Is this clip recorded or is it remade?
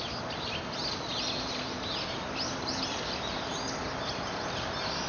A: recorded